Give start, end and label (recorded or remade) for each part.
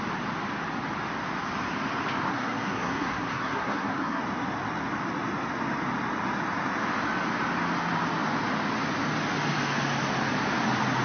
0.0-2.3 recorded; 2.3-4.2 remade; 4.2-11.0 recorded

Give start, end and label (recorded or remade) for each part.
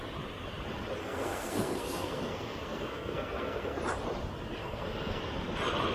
0.0-1.0 recorded; 1.0-3.8 remade; 3.8-4.6 recorded; 4.6-5.2 remade; 5.2-5.9 recorded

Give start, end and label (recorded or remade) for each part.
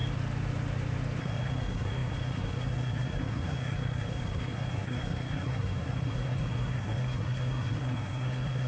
0.0-1.2 recorded; 1.2-8.7 remade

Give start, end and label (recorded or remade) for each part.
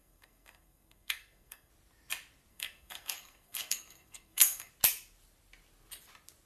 0.0-1.7 remade; 1.7-2.5 recorded; 2.5-4.7 remade; 4.7-6.5 recorded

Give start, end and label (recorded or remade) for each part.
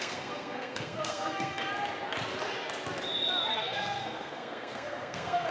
0.0-1.7 remade; 1.7-3.5 recorded; 3.5-5.5 remade